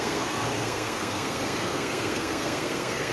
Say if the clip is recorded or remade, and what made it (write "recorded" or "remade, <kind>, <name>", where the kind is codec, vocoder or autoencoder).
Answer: remade, codec, SNAC